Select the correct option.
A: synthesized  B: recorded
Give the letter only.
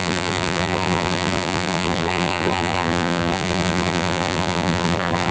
A